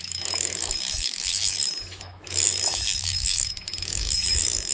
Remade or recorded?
remade